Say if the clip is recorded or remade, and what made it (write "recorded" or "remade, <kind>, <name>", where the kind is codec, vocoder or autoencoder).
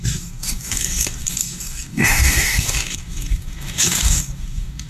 remade, codec, DAC